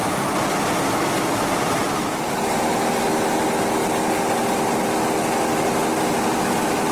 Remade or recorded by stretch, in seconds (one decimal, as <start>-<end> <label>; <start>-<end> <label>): 0.0-6.9 recorded